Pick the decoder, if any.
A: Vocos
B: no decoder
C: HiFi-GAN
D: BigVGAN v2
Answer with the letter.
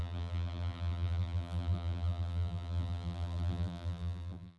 D